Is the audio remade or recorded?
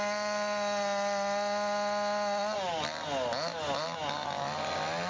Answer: recorded